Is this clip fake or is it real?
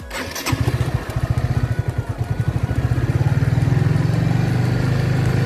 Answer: real